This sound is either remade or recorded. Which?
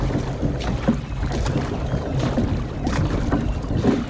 recorded